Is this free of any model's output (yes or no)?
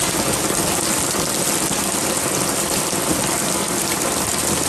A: yes